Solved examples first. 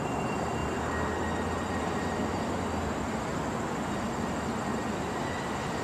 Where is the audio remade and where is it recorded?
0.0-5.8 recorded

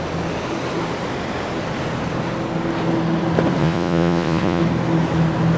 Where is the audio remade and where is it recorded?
0.0-3.6 recorded; 3.6-4.6 remade; 4.6-5.6 recorded

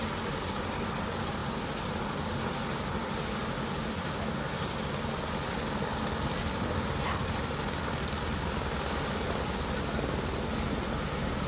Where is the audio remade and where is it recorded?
0.0-11.5 recorded

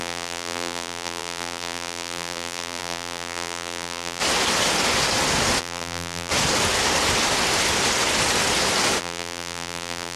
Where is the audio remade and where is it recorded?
0.0-4.2 remade; 4.2-5.6 recorded; 5.6-6.3 remade; 6.3-9.0 recorded; 9.0-10.2 remade

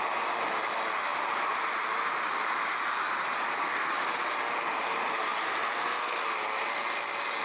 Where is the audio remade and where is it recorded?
0.0-7.4 recorded